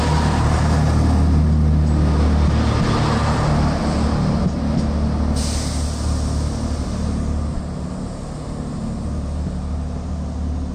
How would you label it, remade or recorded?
recorded